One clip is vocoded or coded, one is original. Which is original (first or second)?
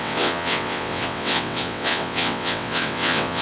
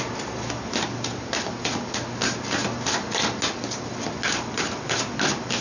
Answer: second